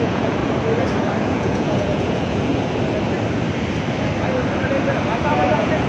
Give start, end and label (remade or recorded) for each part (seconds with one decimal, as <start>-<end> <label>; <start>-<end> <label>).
0.0-0.4 remade; 0.4-1.2 recorded; 1.2-2.5 remade; 2.5-5.5 recorded; 5.5-5.9 remade